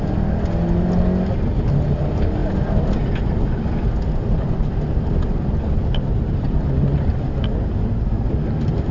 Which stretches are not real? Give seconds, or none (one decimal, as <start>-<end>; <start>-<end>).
none